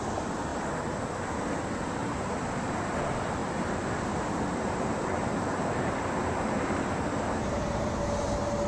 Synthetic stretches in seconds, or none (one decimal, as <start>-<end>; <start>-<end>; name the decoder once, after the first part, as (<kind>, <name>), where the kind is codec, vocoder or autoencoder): 2.0-2.8 (vocoder, BigVGAN v2); 3.4-7.8